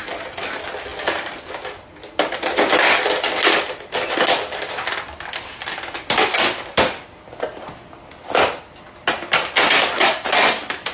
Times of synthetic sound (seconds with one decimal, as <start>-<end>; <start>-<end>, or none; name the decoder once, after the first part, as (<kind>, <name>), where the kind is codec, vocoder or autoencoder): none